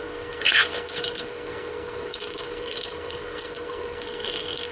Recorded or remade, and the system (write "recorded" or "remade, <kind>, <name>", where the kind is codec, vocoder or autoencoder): remade, codec, SNAC